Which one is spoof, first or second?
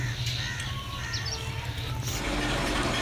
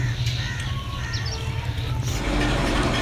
second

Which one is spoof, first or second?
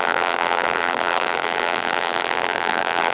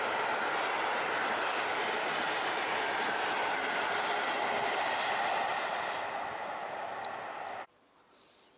first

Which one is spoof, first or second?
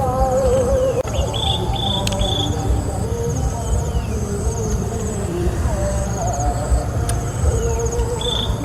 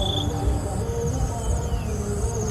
first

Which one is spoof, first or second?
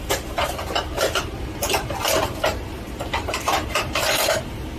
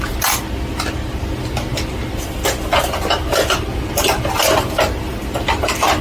first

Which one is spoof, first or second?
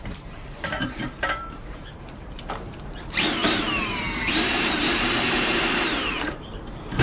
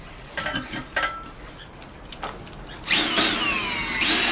first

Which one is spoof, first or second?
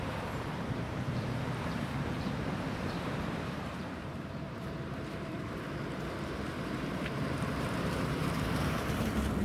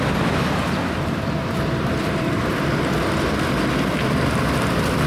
first